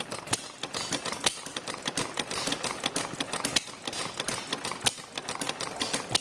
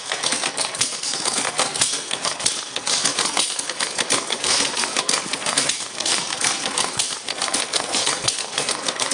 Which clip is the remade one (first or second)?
second